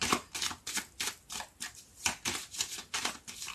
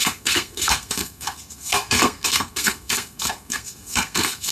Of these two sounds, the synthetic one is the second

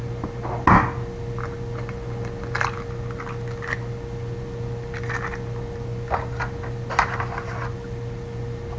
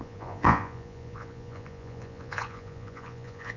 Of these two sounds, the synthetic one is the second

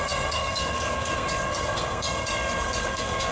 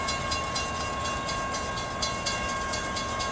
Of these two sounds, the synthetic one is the first